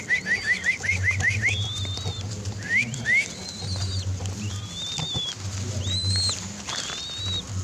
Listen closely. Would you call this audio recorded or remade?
recorded